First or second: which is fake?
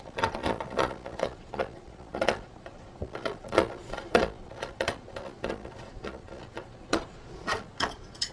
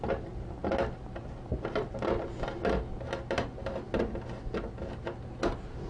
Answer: first